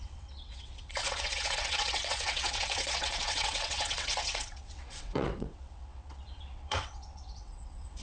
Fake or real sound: fake